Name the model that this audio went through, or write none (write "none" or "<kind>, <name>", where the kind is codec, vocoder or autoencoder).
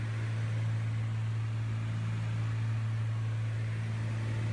none